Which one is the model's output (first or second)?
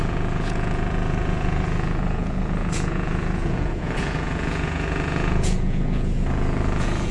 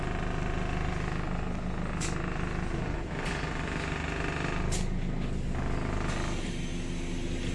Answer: first